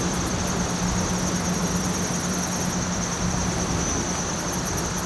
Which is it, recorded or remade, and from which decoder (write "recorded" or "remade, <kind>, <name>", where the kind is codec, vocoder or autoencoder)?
recorded